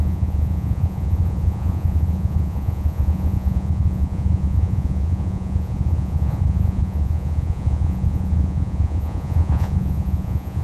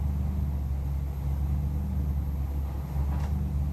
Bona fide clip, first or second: second